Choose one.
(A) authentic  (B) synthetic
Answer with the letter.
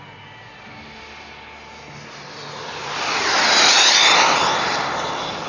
A